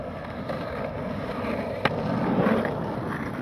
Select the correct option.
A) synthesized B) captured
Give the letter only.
B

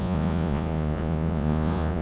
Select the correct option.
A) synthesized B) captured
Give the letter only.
A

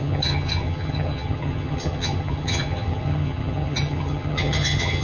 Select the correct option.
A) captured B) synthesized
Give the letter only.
B